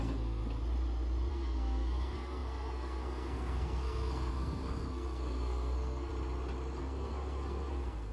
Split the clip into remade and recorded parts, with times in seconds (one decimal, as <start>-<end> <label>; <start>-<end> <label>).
0.0-0.4 remade; 0.4-1.3 recorded; 1.3-6.1 remade; 6.1-6.8 recorded; 6.8-8.1 remade